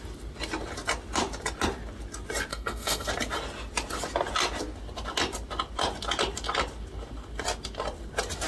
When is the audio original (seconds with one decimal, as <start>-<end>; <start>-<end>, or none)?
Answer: 0.0-2.5; 3.1-8.5